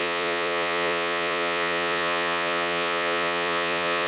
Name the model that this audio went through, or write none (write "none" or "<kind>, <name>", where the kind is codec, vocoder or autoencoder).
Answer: vocoder, Vocos